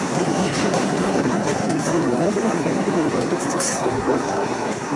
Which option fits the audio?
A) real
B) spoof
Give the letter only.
B